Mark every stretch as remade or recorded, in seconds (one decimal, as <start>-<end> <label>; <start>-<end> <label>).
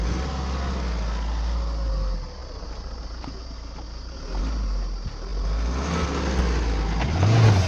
0.0-7.7 recorded